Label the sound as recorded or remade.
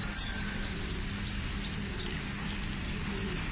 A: recorded